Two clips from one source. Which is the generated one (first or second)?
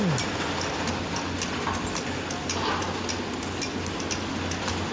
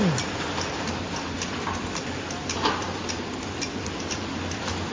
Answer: second